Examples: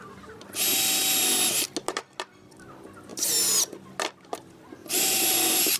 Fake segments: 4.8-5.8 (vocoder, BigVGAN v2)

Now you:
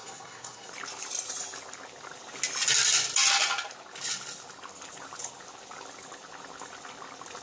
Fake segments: 0.0-0.7 (codec, SNAC)

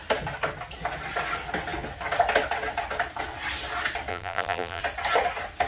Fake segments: 4.1-4.8 (vocoder, BigVGAN v2)

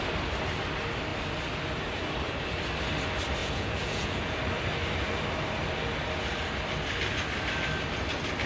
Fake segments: 3.4-4.4 (vocoder, Vocos)

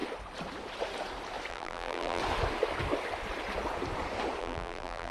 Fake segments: 1.5-2.2 (vocoder, BigVGAN v2); 4.4-5.1

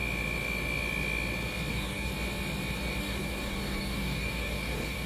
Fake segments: 1.7-2.1 (codec, DAC); 3.0-5.1

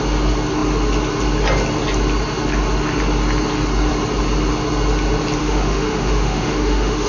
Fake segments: 5.4-7.1 (autoencoder, DAC-VAE)

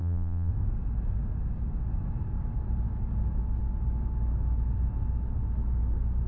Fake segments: 0.0-0.5 (vocoder, BigVGAN v2)